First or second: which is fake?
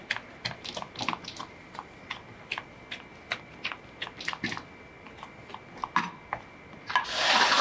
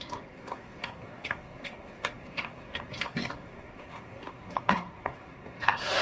second